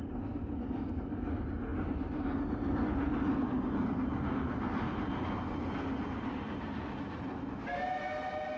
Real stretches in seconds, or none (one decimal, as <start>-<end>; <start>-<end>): 0.0-8.6